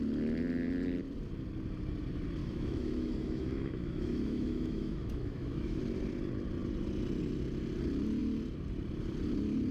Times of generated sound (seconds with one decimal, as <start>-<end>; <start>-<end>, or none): 2.4-5.8